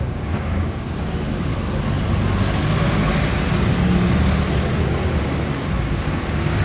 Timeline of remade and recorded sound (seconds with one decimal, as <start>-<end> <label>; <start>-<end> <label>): 0.0-1.5 remade; 1.5-5.0 recorded; 5.0-6.6 remade